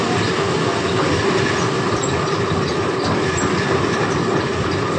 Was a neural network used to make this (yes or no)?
no